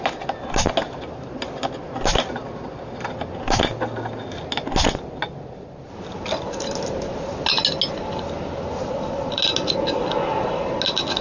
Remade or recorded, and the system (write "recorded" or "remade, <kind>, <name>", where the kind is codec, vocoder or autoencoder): recorded